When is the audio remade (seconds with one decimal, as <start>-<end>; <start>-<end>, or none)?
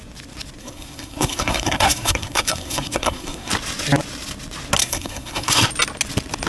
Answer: 0.6-3.5; 4.8-5.7